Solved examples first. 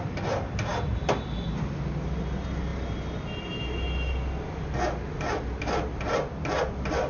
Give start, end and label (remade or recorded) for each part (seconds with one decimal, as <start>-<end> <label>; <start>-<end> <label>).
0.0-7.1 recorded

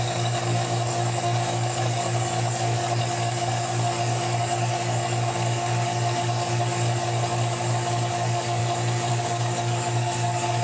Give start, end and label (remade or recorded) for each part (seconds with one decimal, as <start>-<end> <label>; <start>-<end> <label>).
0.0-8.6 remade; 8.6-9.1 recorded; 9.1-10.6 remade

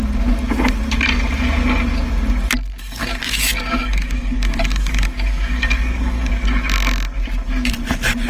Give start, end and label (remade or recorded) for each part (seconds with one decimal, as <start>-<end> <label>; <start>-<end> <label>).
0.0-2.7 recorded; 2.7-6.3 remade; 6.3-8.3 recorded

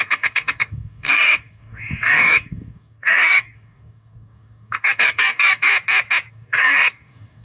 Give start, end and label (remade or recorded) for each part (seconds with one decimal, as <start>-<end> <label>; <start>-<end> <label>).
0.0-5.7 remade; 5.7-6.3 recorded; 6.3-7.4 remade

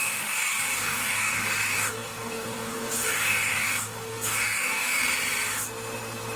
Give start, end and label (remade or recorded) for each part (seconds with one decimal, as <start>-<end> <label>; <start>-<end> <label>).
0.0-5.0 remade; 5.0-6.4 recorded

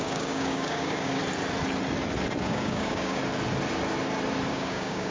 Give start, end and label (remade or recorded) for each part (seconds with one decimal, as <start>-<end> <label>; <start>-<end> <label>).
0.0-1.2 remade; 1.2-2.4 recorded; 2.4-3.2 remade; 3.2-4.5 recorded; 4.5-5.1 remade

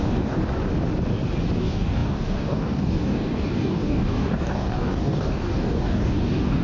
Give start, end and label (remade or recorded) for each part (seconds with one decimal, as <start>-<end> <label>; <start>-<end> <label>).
0.0-0.4 remade; 0.4-1.6 recorded; 1.6-6.6 remade

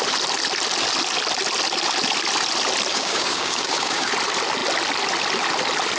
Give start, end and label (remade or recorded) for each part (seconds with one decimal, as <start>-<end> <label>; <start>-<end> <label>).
0.0-2.9 recorded; 2.9-4.1 remade; 4.1-6.0 recorded